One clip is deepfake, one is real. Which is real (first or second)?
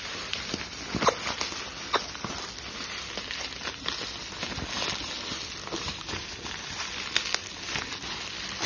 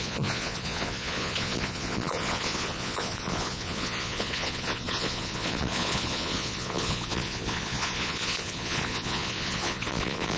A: first